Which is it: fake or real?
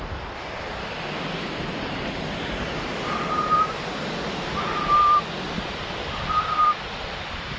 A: real